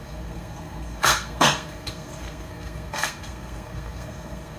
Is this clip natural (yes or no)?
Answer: no